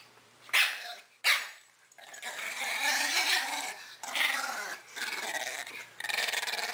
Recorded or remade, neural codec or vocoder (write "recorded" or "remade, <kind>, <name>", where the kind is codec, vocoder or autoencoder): remade, vocoder, BigVGAN v2